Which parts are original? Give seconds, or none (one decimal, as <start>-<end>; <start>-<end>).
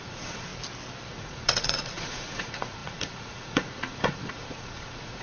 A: 0.5-1.1